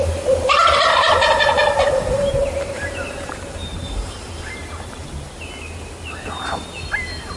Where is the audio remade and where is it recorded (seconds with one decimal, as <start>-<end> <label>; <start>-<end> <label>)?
0.0-0.9 recorded; 0.9-5.1 remade; 5.1-7.4 recorded